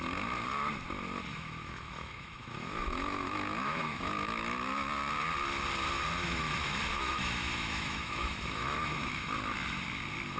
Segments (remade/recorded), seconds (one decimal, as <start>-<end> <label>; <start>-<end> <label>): 0.0-1.3 recorded; 1.3-4.9 remade; 4.9-6.2 recorded; 6.2-9.3 remade; 9.3-10.4 recorded

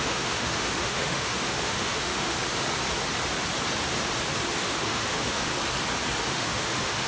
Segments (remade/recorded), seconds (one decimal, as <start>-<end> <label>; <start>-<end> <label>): 0.0-2.4 remade; 2.4-4.6 recorded; 4.6-5.5 remade; 5.5-6.2 recorded; 6.2-7.1 remade

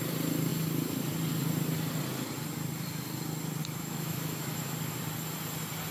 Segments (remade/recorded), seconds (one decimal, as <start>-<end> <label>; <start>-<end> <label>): 0.0-3.6 recorded; 3.6-4.6 remade; 4.6-5.9 recorded